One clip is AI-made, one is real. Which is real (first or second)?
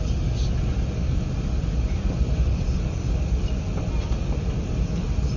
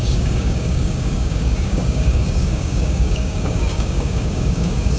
first